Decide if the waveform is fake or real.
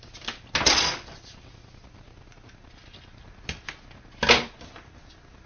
real